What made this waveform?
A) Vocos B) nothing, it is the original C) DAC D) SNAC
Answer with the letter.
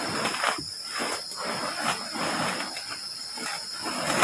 B